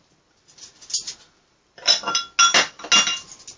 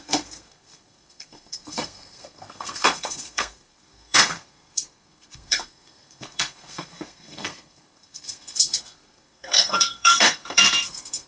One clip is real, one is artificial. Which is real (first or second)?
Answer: first